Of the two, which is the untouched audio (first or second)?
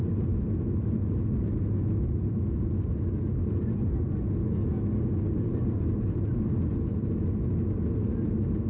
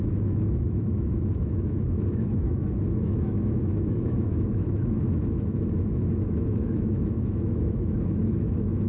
first